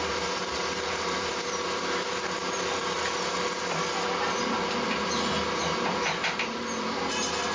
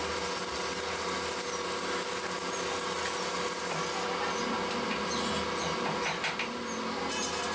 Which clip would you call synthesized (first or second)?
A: first